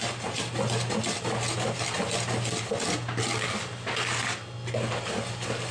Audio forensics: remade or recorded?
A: recorded